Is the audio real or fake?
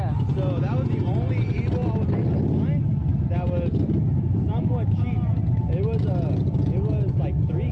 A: real